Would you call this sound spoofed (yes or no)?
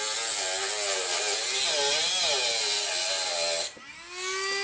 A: no